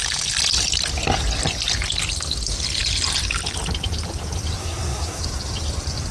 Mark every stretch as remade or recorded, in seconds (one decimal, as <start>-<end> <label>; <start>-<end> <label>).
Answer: 0.0-4.6 recorded; 4.6-5.2 remade; 5.2-6.1 recorded